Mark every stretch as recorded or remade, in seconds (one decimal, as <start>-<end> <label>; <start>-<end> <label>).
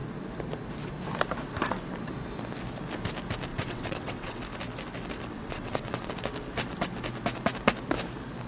0.0-3.5 recorded; 3.5-4.4 remade; 4.4-5.3 recorded; 5.3-6.1 remade; 6.1-8.5 recorded